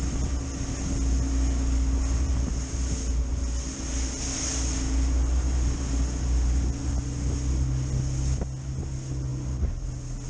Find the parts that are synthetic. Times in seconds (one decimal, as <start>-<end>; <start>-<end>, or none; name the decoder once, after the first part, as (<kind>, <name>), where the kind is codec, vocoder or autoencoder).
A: none